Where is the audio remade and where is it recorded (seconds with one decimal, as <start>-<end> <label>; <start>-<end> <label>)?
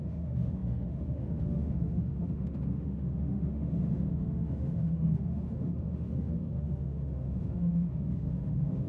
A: 0.0-8.9 remade